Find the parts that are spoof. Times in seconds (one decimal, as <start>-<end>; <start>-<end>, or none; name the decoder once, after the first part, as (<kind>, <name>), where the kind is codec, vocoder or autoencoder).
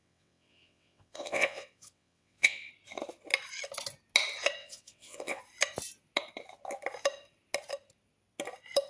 0.0-2.7 (vocoder, WaveNeXt); 4.6-5.4